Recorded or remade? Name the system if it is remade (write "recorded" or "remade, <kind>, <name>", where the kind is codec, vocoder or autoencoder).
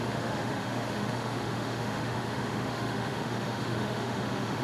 remade, autoencoder, DAC-VAE